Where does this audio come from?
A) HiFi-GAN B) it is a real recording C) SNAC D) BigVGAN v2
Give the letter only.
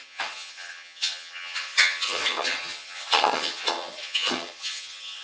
A